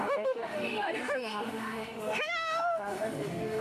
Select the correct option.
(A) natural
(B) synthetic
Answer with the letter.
B